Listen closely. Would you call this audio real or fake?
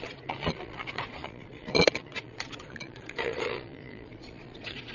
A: fake